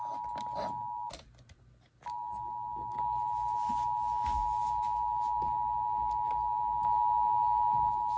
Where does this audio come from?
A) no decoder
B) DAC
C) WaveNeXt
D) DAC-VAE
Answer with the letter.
A